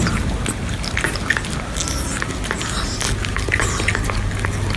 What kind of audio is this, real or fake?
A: real